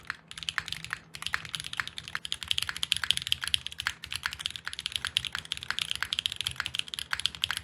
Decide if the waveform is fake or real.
real